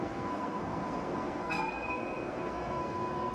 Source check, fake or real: fake